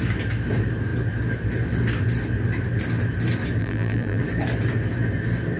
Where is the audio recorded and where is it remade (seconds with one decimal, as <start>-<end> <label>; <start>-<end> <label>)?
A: 0.0-3.6 recorded; 3.6-4.2 remade; 4.2-5.6 recorded